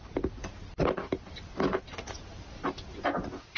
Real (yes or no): yes